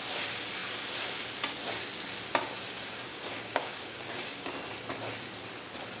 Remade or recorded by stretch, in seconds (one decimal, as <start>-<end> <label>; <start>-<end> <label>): 0.0-3.1 recorded; 3.1-4.5 remade; 4.5-6.0 recorded